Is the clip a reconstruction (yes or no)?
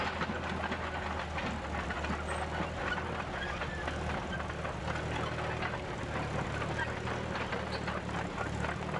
no